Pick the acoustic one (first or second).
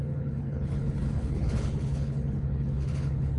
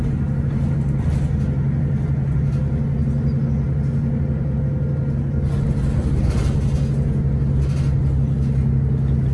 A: second